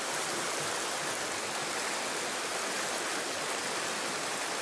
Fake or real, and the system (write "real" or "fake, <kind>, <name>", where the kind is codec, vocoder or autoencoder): real